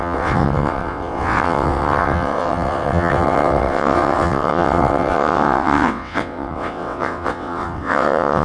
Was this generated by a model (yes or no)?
yes